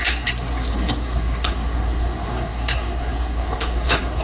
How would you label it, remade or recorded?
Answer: remade